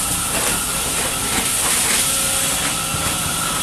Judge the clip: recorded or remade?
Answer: recorded